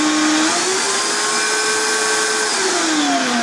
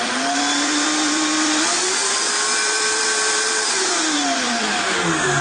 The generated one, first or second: second